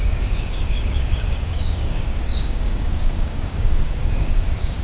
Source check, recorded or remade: remade